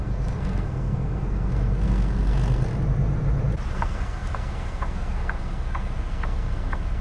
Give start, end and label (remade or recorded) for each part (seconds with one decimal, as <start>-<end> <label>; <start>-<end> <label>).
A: 0.0-2.7 remade; 2.7-3.7 recorded; 3.7-7.0 remade